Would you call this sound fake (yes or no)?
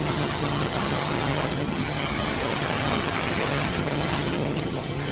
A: yes